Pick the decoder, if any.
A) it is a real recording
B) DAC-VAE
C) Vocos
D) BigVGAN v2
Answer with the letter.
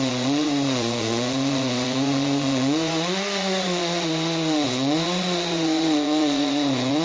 C